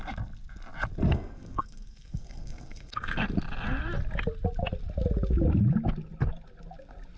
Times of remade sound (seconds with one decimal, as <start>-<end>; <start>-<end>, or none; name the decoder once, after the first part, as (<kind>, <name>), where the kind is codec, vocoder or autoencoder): 1.1-3.2 (codec, SNAC)